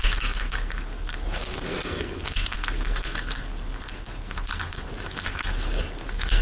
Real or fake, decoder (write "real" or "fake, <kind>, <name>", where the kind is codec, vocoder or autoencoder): fake, codec, SNAC